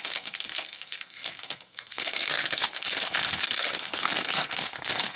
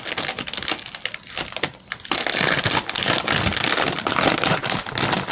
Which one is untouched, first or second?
second